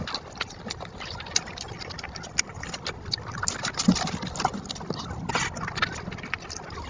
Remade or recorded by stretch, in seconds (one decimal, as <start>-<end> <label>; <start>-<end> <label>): 0.0-6.9 recorded